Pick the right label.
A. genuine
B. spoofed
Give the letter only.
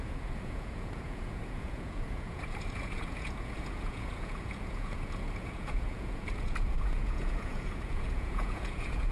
B